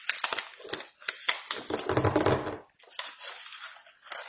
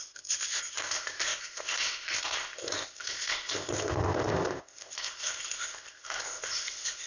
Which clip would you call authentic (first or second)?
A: first